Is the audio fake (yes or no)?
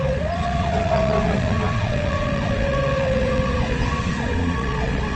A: yes